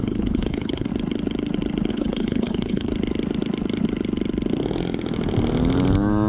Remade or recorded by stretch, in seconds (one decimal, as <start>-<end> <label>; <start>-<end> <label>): 0.0-0.9 remade; 0.9-1.9 recorded; 1.9-2.9 remade; 2.9-6.3 recorded